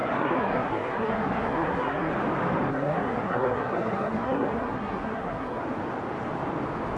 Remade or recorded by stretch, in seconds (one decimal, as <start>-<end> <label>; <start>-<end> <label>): 0.0-2.1 remade; 2.1-2.7 recorded; 2.7-5.6 remade; 5.6-7.0 recorded